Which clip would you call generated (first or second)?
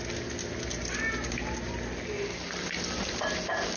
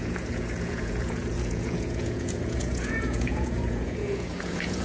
second